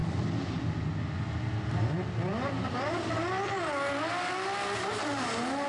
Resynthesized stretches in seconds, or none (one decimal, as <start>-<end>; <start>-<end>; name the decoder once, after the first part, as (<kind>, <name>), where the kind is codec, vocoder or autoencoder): none